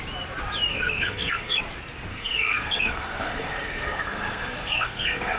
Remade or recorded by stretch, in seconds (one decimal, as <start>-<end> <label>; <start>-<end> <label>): 0.0-0.7 recorded; 0.7-1.6 remade; 1.6-2.1 recorded; 2.1-5.4 remade